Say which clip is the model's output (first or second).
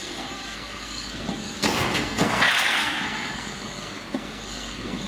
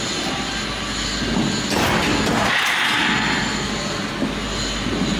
first